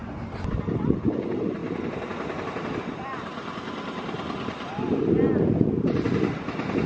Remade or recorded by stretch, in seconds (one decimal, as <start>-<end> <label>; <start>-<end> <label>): 0.0-6.9 recorded